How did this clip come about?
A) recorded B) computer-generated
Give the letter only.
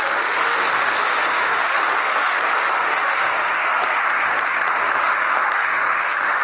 B